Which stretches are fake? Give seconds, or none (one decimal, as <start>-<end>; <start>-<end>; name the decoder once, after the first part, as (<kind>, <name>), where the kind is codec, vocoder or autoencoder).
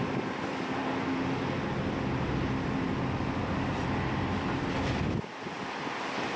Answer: none